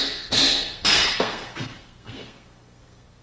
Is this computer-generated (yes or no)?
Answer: yes